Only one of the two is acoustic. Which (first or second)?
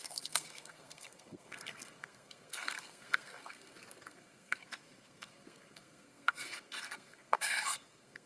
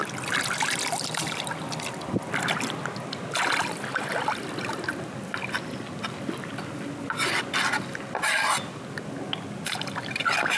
second